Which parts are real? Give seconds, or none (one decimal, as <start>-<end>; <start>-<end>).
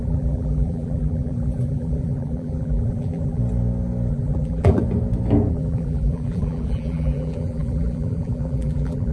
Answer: 3.4-4.1; 4.8-5.5